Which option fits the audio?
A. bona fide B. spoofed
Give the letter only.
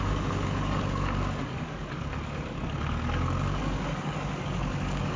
B